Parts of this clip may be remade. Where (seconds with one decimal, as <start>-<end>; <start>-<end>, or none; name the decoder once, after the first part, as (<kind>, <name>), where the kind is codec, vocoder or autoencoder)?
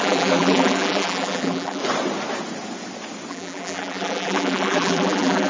0.0-1.8 (vocoder, BigVGAN v2); 3.3-5.5